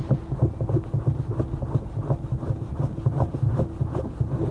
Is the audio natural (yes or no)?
yes